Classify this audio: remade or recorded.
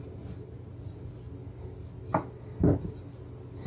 recorded